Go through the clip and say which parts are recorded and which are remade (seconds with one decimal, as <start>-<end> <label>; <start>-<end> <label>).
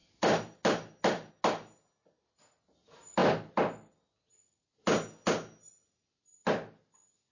0.0-1.3 remade; 1.3-3.2 recorded; 3.2-4.3 remade; 4.3-7.3 recorded